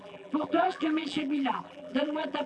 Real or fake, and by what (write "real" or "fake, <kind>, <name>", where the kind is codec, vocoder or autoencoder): fake, vocoder, BigVGAN v2